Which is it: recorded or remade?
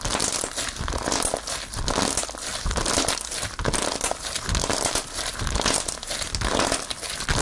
recorded